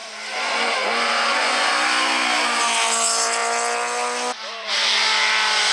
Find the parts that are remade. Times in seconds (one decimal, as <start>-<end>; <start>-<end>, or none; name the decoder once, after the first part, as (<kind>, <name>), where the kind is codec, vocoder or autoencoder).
0.0-1.7 (vocoder, Vocos)